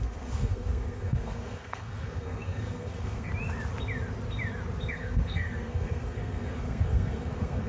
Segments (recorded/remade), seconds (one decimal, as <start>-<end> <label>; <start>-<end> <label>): 0.0-3.3 remade; 3.3-4.9 recorded; 4.9-7.7 remade